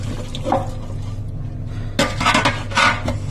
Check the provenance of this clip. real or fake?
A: real